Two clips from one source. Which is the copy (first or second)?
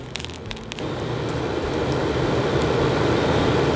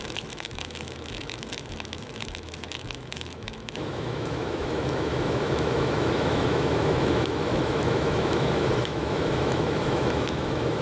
second